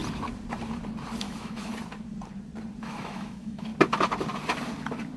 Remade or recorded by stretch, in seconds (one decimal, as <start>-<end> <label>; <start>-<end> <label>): 0.0-1.2 recorded; 1.2-1.7 remade; 1.7-2.8 recorded; 2.8-3.7 remade; 3.7-5.2 recorded